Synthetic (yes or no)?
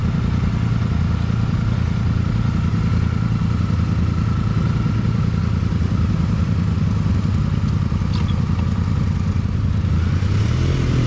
no